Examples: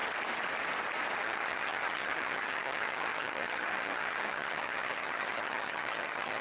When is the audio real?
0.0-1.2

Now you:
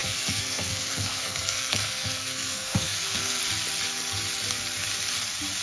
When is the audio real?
3.4-5.6

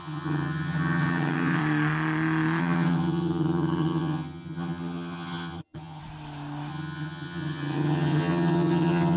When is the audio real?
1.6-2.6; 6.0-6.7